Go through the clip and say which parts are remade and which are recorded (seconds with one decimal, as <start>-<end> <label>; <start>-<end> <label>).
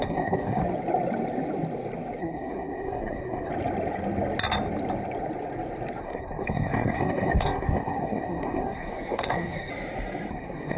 0.0-0.6 remade; 0.6-2.2 recorded; 2.2-3.5 remade; 3.5-6.0 recorded; 6.0-9.7 remade; 9.7-10.3 recorded; 10.3-10.8 remade